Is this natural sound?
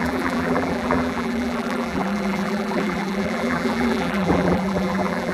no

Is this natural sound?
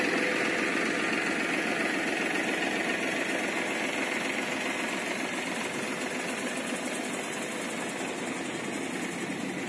yes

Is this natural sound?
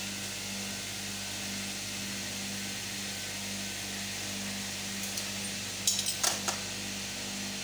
yes